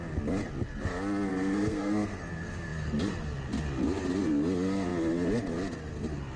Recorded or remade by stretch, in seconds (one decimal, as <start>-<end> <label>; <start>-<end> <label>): 0.0-1.3 recorded; 1.3-2.2 remade; 2.2-6.4 recorded